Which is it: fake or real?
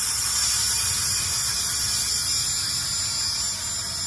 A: real